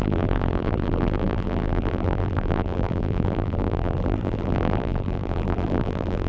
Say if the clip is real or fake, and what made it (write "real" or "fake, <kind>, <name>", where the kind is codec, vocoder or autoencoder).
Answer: fake, vocoder, BigVGAN v2